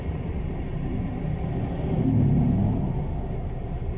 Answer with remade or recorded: recorded